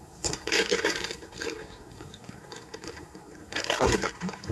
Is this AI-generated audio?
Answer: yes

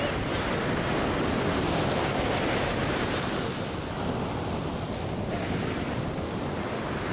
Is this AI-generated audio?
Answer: no